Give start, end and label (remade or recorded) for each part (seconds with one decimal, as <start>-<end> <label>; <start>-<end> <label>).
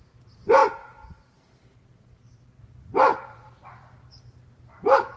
0.0-5.2 recorded